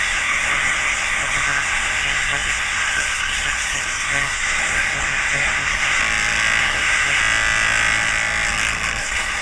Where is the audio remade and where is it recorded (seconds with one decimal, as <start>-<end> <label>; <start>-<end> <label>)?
0.0-6.0 remade; 6.0-6.6 recorded; 6.6-7.2 remade; 7.2-9.0 recorded; 9.0-9.4 remade